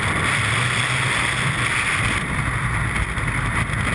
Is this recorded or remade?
recorded